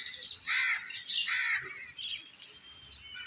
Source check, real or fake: real